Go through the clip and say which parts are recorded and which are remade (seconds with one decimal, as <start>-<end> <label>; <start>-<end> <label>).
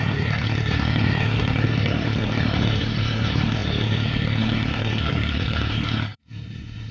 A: 0.0-6.9 remade